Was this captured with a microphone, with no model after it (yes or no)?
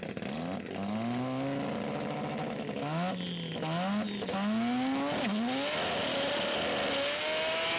yes